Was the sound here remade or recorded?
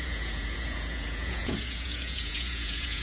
remade